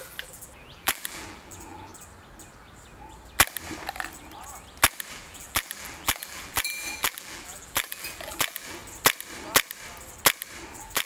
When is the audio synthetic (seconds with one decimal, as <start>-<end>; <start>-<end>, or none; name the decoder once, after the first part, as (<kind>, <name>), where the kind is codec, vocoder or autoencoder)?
0.0-1.9 (vocoder, BigVGAN v2); 5.1-8.8; 10.7-11.1